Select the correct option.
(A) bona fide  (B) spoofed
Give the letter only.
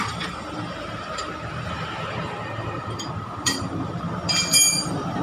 B